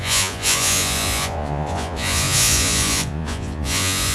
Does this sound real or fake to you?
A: fake